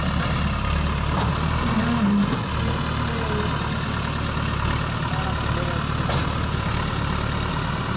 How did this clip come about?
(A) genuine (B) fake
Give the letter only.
A